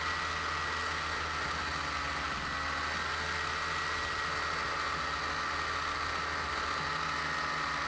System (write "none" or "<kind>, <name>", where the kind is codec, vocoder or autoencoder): none